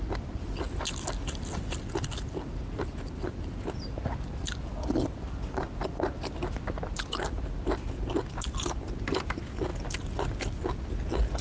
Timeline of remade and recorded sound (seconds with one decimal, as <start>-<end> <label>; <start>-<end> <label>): 0.0-11.4 recorded

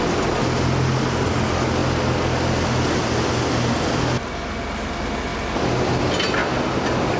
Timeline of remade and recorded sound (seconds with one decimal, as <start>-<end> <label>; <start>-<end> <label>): 0.0-6.4 recorded; 6.4-7.2 remade